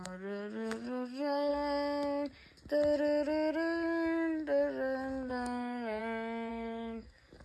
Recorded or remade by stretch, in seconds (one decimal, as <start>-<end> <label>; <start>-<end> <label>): 0.0-1.5 remade; 1.5-5.3 recorded; 5.3-6.0 remade; 6.0-6.5 recorded; 6.5-7.4 remade